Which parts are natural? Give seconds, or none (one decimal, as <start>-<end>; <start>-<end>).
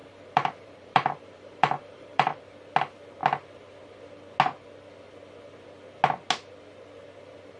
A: 2.4-7.6